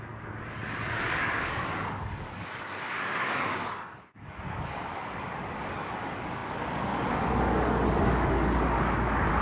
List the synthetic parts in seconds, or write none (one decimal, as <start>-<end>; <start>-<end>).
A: 0.0-9.4